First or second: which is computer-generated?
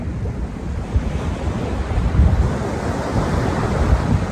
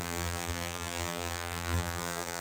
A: second